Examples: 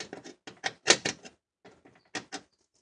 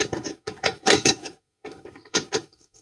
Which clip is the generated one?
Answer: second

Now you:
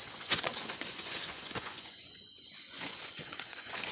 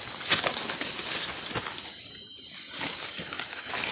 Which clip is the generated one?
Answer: first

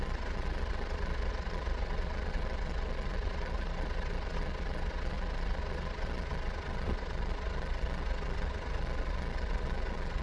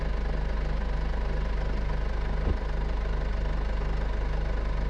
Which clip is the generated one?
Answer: first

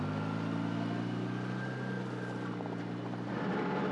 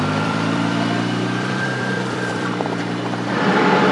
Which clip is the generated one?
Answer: second